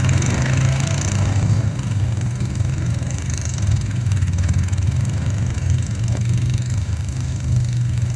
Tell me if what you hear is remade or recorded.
remade